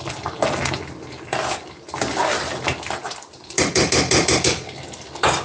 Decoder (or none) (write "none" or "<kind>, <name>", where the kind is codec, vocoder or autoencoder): none